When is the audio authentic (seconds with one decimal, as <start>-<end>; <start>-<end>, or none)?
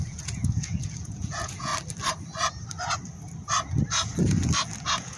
1.7-4.8